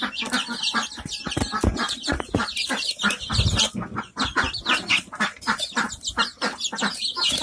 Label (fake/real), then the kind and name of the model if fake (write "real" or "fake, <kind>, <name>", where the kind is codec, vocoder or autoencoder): real